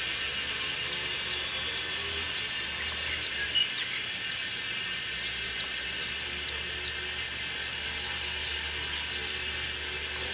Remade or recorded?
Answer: recorded